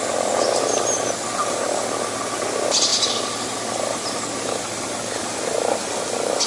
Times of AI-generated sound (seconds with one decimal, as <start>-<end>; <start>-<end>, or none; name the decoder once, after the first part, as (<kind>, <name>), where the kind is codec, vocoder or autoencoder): none